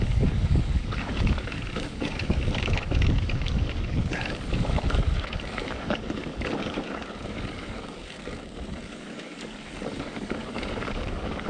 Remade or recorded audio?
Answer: remade